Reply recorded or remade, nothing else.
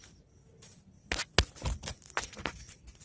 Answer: recorded